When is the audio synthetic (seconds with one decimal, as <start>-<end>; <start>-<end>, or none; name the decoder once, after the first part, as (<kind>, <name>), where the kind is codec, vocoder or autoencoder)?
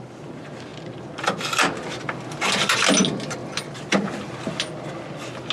none